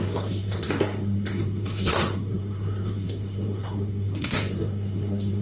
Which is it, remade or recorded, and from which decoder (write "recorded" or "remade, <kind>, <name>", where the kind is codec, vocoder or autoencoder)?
remade, codec, SNAC